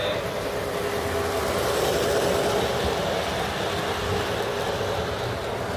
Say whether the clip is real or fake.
real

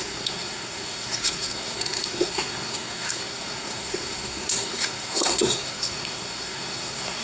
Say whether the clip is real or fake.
fake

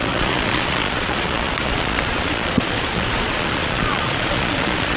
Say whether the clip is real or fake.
fake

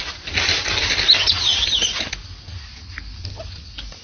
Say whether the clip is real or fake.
real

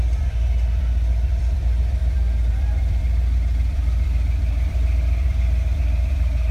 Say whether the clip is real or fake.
fake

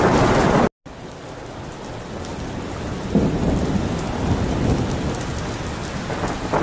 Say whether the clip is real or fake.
real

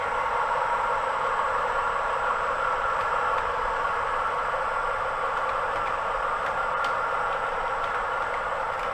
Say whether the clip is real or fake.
fake